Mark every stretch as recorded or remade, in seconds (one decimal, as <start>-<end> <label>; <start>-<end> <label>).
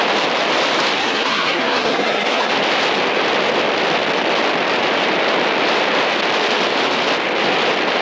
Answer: 0.0-1.0 recorded; 1.0-2.5 remade; 2.5-8.0 recorded